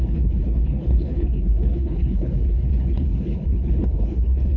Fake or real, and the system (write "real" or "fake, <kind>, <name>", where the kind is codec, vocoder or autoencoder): fake, codec, HILCodec